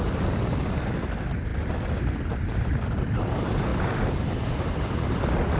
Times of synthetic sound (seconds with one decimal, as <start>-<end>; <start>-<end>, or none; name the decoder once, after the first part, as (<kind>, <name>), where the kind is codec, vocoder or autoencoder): none